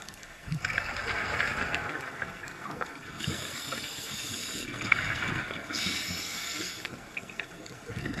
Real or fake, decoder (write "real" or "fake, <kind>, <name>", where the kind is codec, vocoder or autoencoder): fake, codec, SNAC